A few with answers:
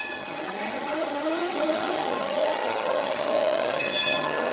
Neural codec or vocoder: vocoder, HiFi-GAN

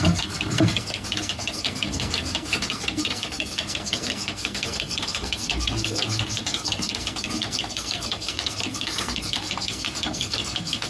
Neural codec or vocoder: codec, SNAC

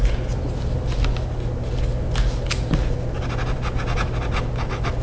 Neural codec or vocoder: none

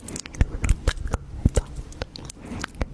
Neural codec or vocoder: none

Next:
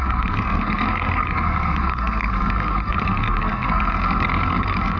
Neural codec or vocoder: codec, SNAC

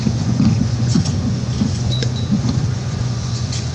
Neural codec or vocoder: vocoder, Vocos